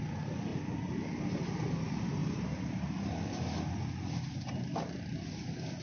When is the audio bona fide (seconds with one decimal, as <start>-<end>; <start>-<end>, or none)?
0.0-5.8